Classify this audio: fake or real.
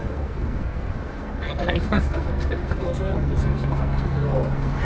fake